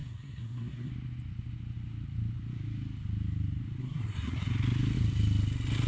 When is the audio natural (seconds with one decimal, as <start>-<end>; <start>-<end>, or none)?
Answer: 0.9-3.8; 4.5-5.9